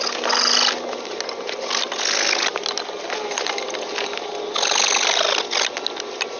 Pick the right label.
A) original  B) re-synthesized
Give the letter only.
A